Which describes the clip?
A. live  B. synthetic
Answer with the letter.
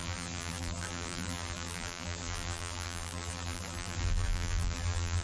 B